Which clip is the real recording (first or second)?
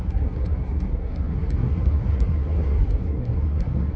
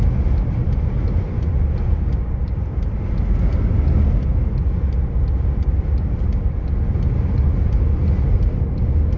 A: second